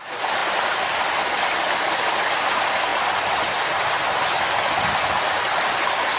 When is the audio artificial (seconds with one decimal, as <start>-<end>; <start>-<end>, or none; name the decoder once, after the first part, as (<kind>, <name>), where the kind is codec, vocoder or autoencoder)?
none